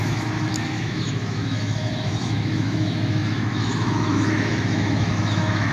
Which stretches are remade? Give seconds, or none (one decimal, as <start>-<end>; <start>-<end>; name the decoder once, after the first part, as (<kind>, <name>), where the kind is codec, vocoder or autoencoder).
0.0-5.7 (autoencoder, DAC-VAE)